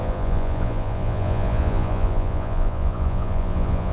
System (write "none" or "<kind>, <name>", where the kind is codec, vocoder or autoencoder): vocoder, Vocos